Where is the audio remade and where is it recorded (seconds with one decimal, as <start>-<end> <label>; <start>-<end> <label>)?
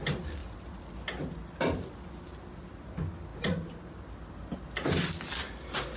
0.0-6.0 recorded